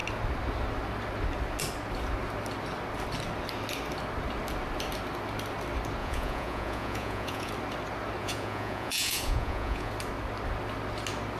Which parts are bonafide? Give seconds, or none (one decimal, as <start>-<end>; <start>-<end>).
0.0-6.0; 7.5-8.2; 9.9-11.4